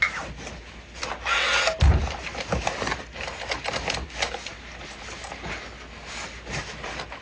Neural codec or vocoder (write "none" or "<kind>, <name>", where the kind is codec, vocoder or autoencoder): none